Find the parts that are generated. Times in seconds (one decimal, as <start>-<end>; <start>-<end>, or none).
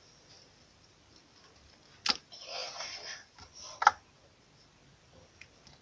none